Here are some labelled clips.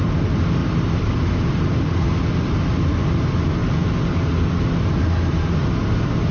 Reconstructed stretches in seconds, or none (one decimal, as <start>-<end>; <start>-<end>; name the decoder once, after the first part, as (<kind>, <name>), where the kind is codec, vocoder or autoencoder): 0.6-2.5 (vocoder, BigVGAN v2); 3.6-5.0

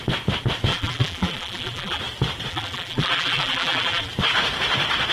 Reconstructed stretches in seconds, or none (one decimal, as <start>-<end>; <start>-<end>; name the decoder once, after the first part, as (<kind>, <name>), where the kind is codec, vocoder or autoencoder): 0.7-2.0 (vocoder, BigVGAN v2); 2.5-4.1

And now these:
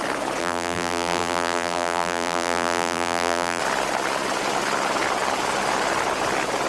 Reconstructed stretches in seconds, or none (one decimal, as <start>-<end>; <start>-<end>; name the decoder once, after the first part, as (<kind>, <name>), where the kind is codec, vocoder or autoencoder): 0.4-3.6 (vocoder, BigVGAN v2)

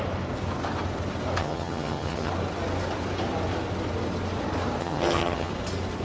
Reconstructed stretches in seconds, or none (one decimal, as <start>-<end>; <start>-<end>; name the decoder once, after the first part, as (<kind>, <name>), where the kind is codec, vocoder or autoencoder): 1.4-2.3 (vocoder, HiFi-GAN); 4.8-5.5